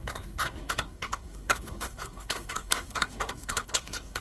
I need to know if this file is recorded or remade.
remade